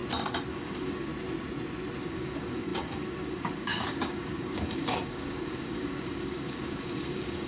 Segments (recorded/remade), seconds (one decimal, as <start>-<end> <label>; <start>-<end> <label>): 0.0-0.5 recorded; 0.5-1.1 remade; 1.1-2.0 recorded; 2.0-7.5 remade